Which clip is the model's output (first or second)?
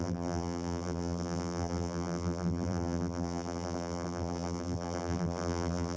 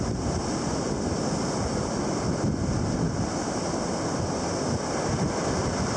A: first